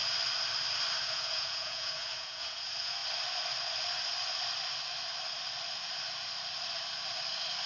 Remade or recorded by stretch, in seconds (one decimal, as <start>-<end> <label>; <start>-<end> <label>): 0.0-1.0 recorded; 1.0-3.0 remade; 3.0-7.7 recorded